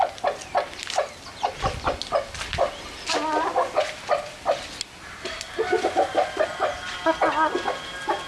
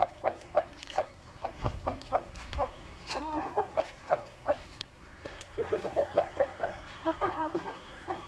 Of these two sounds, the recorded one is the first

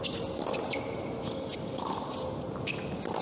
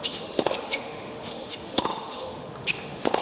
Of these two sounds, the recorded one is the first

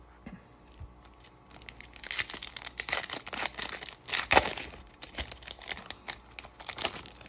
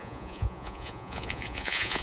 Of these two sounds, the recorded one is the first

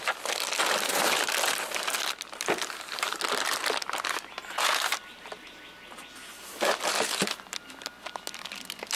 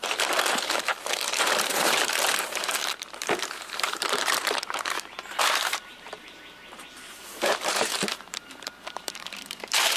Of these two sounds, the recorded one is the first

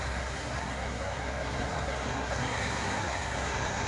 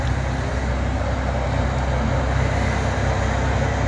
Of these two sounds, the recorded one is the second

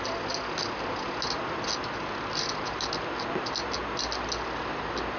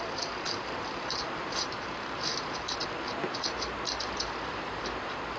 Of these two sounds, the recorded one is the first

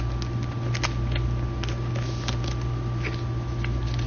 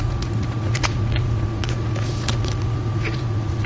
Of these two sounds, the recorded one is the first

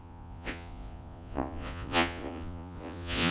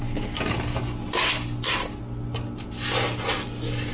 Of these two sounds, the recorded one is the second